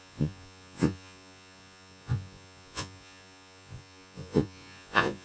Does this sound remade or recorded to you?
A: remade